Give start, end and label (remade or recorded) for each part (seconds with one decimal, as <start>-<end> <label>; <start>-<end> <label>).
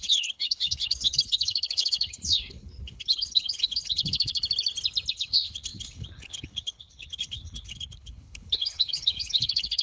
0.0-4.4 remade; 4.4-5.1 recorded; 5.1-9.8 remade